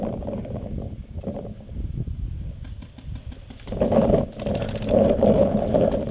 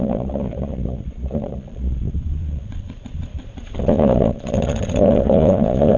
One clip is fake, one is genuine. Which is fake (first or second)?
second